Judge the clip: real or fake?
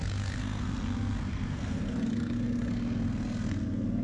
fake